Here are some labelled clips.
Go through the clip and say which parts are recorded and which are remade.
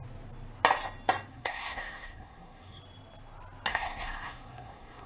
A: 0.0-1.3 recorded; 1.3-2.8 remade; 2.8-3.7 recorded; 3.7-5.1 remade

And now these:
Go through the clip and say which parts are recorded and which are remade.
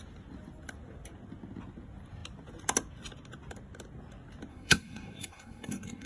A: 0.0-4.5 recorded; 4.5-6.1 remade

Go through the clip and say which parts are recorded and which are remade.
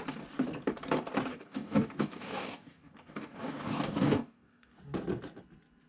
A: 0.0-1.3 recorded; 1.3-4.8 remade; 4.8-5.9 recorded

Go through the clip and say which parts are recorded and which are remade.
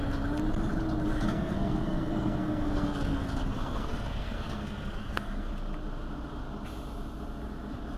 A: 0.0-1.1 recorded; 1.1-5.5 remade; 5.5-8.0 recorded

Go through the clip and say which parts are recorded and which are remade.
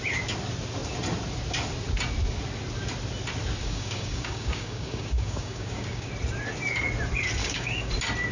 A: 0.0-3.6 recorded; 3.6-6.1 remade; 6.1-7.4 recorded; 7.4-7.9 remade; 7.9-8.3 recorded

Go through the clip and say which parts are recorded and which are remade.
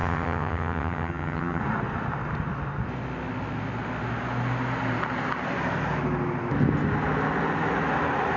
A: 0.0-1.6 remade; 1.6-8.4 recorded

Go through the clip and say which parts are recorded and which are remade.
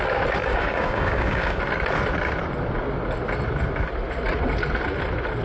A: 0.0-0.4 recorded; 0.4-1.6 remade; 1.6-5.4 recorded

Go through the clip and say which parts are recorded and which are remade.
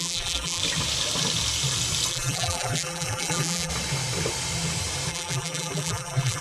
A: 0.0-0.6 remade; 0.6-2.1 recorded; 2.1-3.7 remade; 3.7-5.1 recorded; 5.1-6.4 remade